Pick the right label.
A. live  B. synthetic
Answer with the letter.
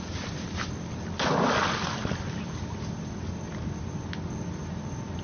A